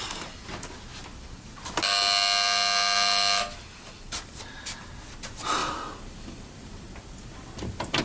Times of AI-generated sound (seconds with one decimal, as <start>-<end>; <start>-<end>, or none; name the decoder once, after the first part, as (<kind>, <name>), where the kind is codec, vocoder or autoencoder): 5.6-8.0 (vocoder, BigVGAN v2)